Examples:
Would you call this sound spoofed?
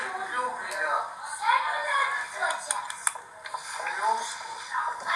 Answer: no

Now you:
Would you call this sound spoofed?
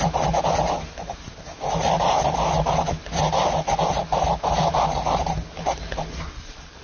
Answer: no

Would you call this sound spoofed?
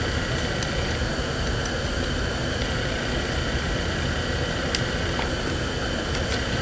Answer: no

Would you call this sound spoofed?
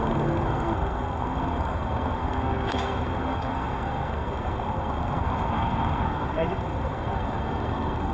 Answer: yes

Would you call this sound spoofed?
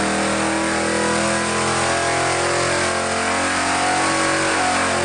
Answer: no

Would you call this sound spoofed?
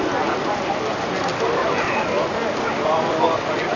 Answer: no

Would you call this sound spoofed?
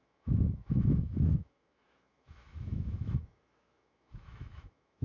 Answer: yes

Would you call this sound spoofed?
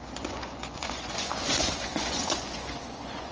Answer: yes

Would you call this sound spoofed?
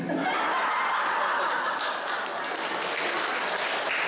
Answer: no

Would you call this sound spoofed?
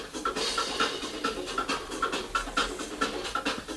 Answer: no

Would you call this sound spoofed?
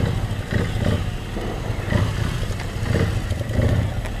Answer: no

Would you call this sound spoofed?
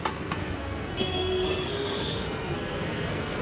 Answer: yes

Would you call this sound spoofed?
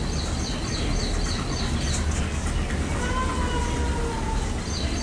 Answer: no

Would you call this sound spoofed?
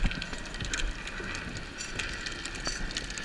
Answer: no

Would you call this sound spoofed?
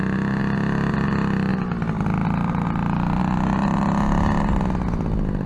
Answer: no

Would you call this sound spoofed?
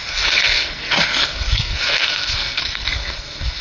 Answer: yes